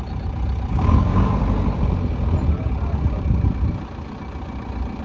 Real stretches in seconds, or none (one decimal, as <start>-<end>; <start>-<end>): 0.0-0.7; 1.4-5.0